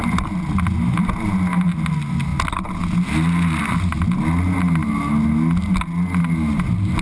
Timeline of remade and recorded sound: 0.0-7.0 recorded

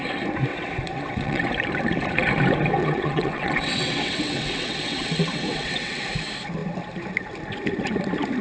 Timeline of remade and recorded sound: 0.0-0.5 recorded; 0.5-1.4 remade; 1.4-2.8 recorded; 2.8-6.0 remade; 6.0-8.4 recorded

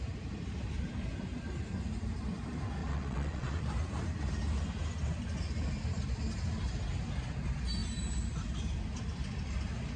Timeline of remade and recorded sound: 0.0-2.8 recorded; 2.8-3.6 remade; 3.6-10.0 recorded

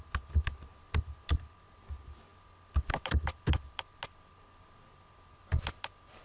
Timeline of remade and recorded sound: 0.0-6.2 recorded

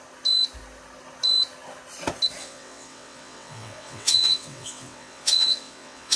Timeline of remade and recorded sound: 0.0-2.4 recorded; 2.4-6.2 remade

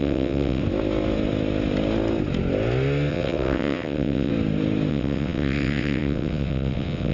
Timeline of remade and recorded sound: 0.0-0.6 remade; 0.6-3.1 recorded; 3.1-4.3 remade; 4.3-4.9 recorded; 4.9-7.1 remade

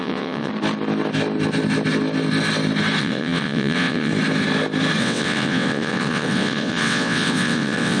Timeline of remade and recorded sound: 0.0-0.5 remade; 0.5-3.0 recorded; 3.0-4.1 remade; 4.1-5.0 recorded; 5.0-8.0 remade

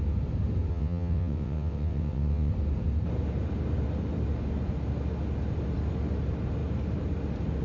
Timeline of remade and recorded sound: 0.0-0.7 recorded; 0.7-2.5 remade; 2.5-7.6 recorded